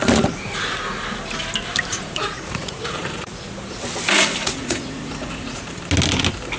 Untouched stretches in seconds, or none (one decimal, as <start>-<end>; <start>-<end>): 0.0-1.9; 3.3-4.4; 5.8-6.6